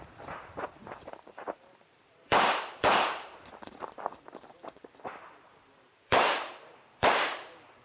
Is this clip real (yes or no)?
no